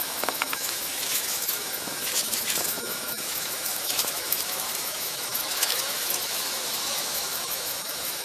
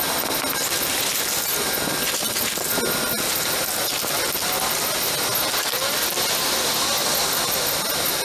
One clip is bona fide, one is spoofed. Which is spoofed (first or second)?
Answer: first